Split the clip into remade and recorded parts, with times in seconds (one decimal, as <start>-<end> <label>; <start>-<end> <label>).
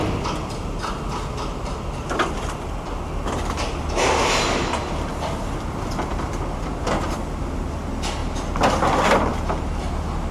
0.0-10.3 recorded